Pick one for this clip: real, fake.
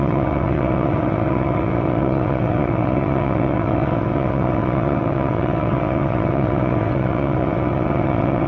fake